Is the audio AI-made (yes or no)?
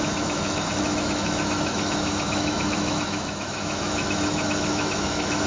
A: yes